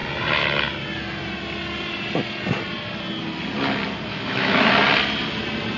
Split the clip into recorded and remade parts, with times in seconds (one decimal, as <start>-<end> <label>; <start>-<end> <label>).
0.0-4.1 recorded; 4.1-4.7 remade; 4.7-5.8 recorded